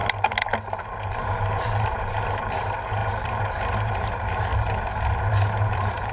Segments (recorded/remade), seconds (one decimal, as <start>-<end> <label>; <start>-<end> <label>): 0.0-1.1 recorded; 1.1-4.5 remade; 4.5-5.3 recorded; 5.3-6.1 remade